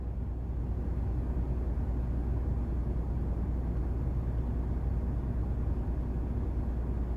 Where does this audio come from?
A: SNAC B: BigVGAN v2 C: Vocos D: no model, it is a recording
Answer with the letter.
D